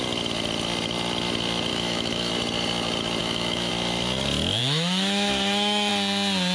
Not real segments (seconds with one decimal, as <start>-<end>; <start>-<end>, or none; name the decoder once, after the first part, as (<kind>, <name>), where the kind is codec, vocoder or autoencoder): 1.7-2.3 (autoencoder, DAC-VAE); 3.2-3.7; 4.6-5.9